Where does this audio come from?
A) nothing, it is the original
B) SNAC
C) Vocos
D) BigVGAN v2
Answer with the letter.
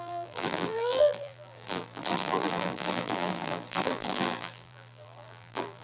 D